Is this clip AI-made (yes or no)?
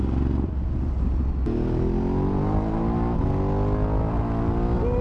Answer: no